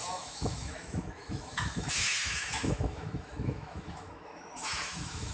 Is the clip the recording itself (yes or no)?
no